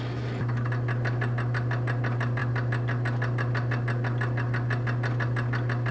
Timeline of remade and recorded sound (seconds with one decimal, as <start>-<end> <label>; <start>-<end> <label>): 0.0-5.9 recorded